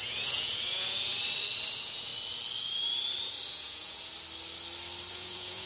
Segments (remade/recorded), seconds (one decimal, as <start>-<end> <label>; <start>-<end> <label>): 0.0-1.1 remade; 1.1-1.7 recorded; 1.7-2.1 remade; 2.1-3.5 recorded; 3.5-4.1 remade; 4.1-5.1 recorded; 5.1-5.7 remade

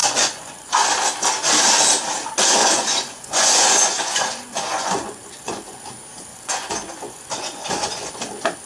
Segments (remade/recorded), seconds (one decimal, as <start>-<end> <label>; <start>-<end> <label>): 0.0-0.9 remade; 0.9-2.6 recorded; 2.6-5.8 remade; 5.8-6.3 recorded; 6.3-8.1 remade; 8.1-8.7 recorded

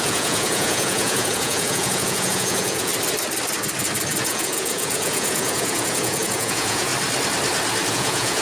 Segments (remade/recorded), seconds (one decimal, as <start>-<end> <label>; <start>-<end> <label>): 0.0-2.9 remade; 2.9-4.2 recorded; 4.2-6.9 remade; 6.9-7.9 recorded; 7.9-8.4 remade

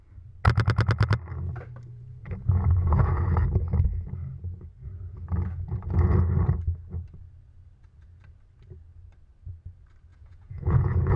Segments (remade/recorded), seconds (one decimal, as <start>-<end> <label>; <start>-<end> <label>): 0.0-1.9 recorded; 1.9-3.2 remade; 3.2-10.1 recorded; 10.1-11.2 remade

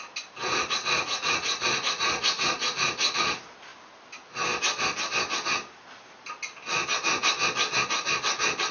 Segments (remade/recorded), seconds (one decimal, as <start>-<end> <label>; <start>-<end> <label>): 0.0-0.4 recorded; 0.4-3.2 remade; 3.2-8.7 recorded

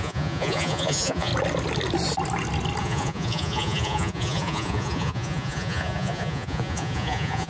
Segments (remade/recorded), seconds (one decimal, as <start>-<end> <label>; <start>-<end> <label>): 0.0-1.3 remade; 1.3-2.8 recorded; 2.8-7.5 remade

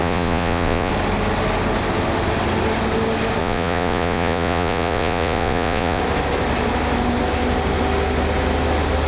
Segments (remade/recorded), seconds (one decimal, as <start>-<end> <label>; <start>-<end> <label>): 0.0-0.9 remade; 0.9-3.4 recorded; 3.4-6.0 remade; 6.0-9.1 recorded

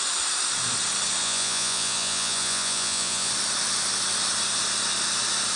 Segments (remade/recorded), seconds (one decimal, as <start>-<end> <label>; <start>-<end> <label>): 0.0-1.2 recorded; 1.2-3.3 remade; 3.3-5.6 recorded